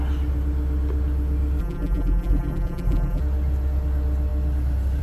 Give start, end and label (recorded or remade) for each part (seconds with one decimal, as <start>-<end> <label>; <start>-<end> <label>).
0.0-1.6 recorded; 1.6-3.2 remade; 3.2-5.0 recorded